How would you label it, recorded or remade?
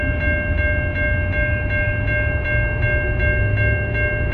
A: recorded